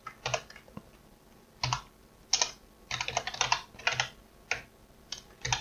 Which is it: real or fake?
real